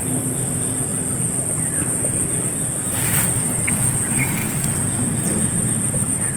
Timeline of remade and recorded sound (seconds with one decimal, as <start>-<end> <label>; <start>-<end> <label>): 0.0-6.4 recorded